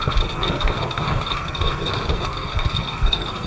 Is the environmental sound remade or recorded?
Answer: remade